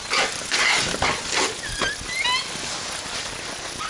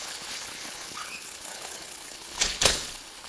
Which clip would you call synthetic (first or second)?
second